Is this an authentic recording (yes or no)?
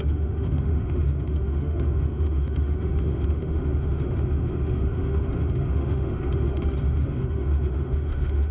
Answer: no